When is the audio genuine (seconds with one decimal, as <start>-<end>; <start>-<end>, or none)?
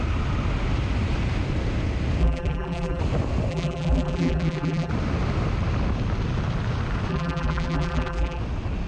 0.0-2.2; 3.0-3.5; 4.9-7.1; 8.4-8.9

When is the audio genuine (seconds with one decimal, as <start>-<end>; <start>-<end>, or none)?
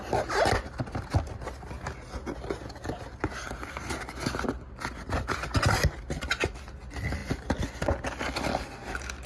0.0-9.3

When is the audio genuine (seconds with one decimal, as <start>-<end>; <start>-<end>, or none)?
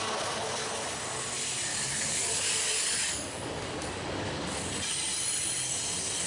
0.0-1.7; 4.7-6.3